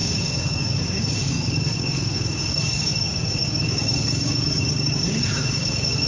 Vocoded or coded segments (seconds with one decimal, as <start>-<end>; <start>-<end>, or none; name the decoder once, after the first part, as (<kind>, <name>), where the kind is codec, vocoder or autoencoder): 0.0-6.1 (codec, DAC)